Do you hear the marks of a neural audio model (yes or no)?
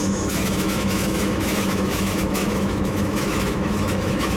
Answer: yes